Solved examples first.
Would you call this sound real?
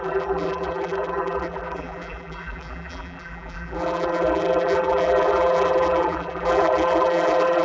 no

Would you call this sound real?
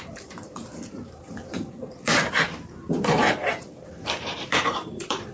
no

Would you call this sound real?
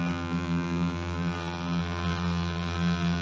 no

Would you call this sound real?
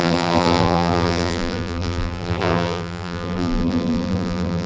no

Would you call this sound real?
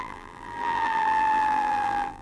no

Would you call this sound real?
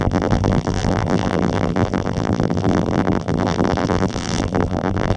no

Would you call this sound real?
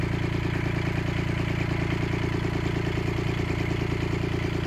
yes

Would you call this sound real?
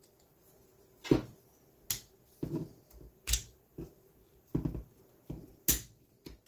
yes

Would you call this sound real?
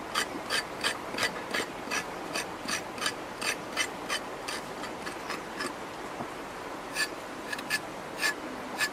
no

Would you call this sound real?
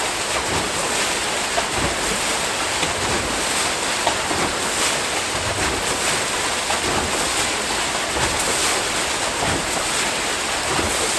yes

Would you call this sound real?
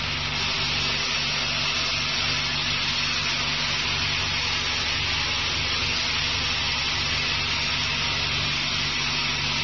yes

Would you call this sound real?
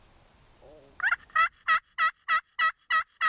yes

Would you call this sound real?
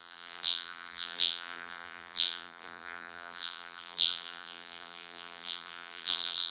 no